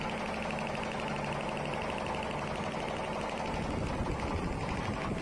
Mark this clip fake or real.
real